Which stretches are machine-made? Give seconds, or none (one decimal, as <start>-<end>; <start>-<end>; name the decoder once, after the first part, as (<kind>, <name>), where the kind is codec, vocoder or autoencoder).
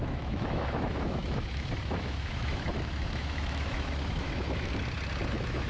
0.0-4.7 (autoencoder, DAC-VAE); 5.3-5.7